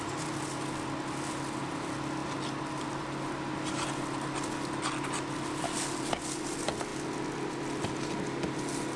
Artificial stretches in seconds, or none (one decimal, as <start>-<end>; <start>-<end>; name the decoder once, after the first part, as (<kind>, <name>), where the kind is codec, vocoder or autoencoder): none